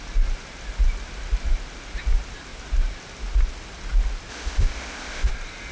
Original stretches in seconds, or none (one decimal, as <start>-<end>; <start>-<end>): 0.0-4.3; 5.3-5.7